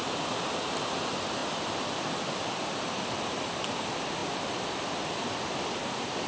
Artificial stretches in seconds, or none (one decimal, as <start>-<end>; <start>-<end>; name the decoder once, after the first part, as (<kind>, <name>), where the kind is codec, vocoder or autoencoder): 1.4-3.2 (vocoder, BigVGAN v2)